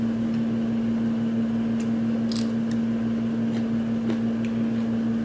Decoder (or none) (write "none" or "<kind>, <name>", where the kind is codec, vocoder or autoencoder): none